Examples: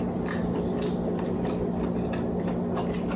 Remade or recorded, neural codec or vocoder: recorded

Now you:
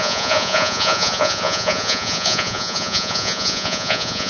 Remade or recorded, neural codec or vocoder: remade, vocoder, Vocos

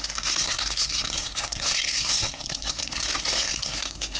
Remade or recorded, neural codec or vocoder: remade, codec, SNAC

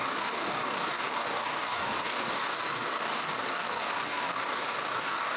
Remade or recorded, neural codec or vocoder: remade, codec, DAC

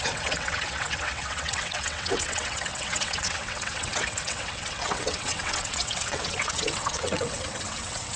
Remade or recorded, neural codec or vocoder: remade, vocoder, WaveNeXt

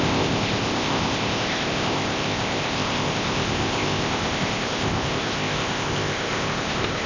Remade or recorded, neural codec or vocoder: remade, codec, ZipCodec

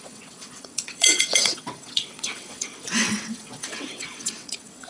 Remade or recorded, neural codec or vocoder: remade, vocoder, WaveNeXt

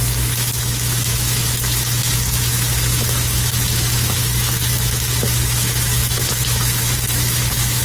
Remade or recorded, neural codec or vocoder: remade, autoencoder, DAC-VAE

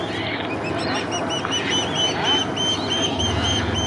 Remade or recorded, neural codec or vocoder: recorded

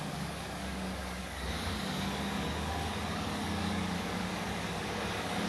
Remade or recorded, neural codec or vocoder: remade, codec, DAC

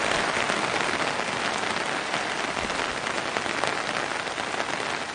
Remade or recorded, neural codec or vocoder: recorded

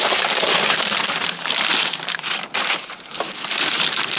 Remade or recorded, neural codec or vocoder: remade, vocoder, BigVGAN v2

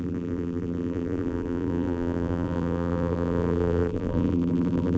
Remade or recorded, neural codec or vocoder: remade, vocoder, BigVGAN v2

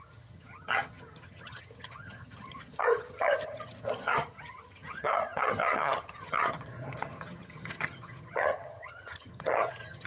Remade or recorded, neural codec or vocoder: remade, vocoder, HiFi-GAN